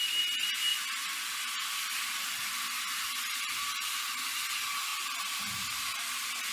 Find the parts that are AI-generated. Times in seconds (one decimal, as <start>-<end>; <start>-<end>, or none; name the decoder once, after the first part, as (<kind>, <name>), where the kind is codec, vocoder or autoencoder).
none